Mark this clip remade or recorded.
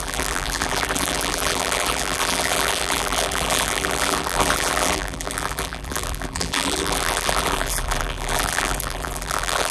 remade